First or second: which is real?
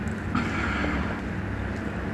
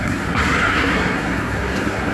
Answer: first